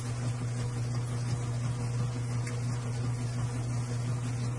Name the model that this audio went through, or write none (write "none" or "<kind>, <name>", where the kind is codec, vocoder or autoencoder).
none